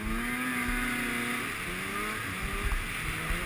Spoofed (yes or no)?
no